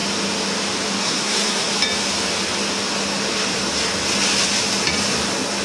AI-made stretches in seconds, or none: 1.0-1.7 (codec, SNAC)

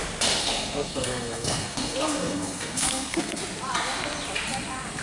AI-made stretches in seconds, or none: 0.4-3.4 (codec, SNAC)

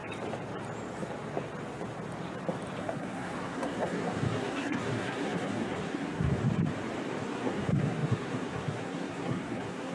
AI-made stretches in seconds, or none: 2.8-6.4 (codec, SNAC); 7.2-9.9

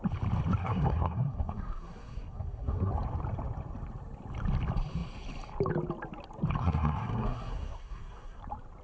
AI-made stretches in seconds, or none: 0.6-2.9 (codec, SNAC); 6.6-8.4

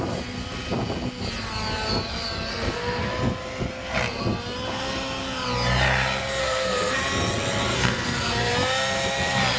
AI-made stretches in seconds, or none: 2.5-3.1 (codec, SNAC); 6.4-7.0; 7.7-8.5

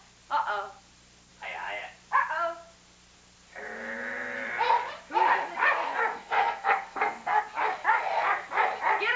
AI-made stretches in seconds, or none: 6.1-7.4 (codec, SNAC)

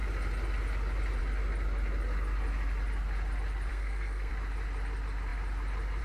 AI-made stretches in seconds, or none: 3.7-4.3 (codec, SNAC)